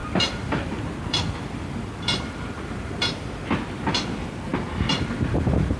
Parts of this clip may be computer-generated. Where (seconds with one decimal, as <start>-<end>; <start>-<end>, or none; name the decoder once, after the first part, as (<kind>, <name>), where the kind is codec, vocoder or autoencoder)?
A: 0.0-3.5 (vocoder, BigVGAN v2); 4.5-5.8

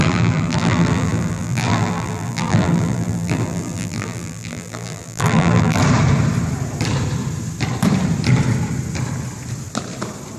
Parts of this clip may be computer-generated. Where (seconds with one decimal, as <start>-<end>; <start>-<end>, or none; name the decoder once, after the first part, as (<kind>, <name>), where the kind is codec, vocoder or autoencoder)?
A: 0.0-5.8 (vocoder, BigVGAN v2)

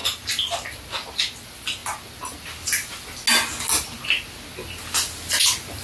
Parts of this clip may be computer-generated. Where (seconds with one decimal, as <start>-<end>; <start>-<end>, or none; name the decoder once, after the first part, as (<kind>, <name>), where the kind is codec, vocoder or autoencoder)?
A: none

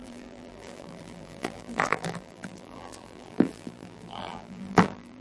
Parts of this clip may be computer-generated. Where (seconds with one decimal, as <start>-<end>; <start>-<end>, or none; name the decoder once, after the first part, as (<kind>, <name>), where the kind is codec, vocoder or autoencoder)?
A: 0.0-5.2 (vocoder, BigVGAN v2)